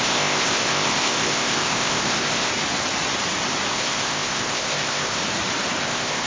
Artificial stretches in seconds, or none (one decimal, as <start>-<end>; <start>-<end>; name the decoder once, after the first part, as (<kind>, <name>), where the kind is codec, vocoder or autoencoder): 0.0-2.5 (codec, ZipCodec); 3.7-5.2; 5.8-6.3